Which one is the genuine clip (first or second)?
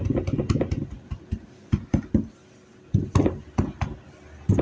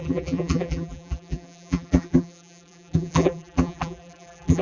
first